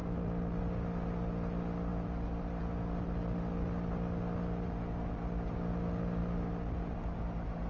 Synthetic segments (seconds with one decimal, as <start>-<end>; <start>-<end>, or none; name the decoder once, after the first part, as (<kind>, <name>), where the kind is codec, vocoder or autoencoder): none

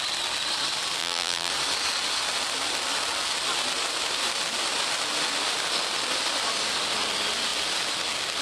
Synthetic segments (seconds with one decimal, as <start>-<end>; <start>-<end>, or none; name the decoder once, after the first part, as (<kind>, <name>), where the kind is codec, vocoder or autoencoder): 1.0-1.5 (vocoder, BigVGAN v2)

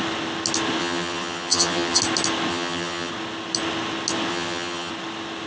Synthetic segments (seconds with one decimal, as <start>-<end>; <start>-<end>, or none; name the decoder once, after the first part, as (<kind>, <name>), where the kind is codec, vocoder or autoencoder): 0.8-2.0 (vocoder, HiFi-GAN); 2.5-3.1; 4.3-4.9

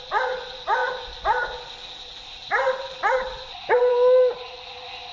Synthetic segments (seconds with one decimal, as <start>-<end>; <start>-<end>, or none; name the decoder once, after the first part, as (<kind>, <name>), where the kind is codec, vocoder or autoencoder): none